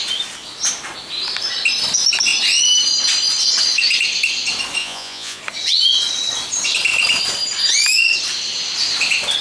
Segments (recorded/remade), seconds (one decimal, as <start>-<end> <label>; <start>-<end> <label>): 0.0-4.8 recorded; 4.8-5.4 remade; 5.4-9.4 recorded